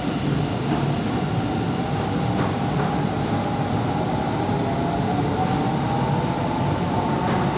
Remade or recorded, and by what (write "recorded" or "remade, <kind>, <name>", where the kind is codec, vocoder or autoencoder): recorded